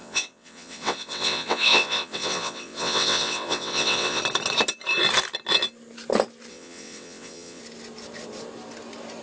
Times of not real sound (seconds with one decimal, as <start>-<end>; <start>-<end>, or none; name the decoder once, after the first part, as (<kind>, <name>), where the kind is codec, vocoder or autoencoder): 0.0-4.2 (vocoder, WaveNeXt); 6.5-7.6